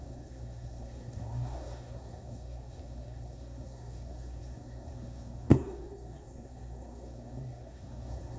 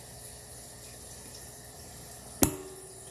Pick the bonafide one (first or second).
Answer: second